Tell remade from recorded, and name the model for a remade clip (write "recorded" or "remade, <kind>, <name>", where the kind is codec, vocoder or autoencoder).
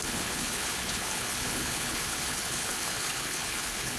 remade, codec, HILCodec